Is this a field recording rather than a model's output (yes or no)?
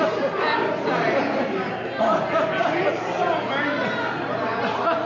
yes